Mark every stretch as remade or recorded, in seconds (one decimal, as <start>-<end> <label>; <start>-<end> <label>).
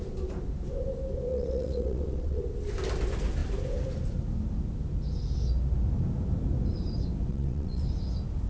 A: 0.0-1.3 recorded; 1.3-2.4 remade; 2.4-7.3 recorded; 7.3-7.8 remade; 7.8-8.5 recorded